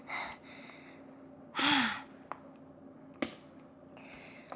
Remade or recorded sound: recorded